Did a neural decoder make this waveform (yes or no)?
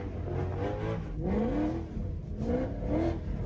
no